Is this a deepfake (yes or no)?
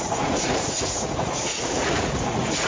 yes